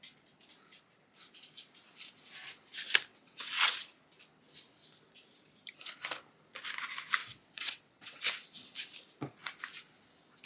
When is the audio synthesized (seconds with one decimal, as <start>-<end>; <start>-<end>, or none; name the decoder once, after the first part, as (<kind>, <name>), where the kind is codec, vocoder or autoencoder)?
3.1-3.8 (vocoder, WaveNeXt); 7.2-8.2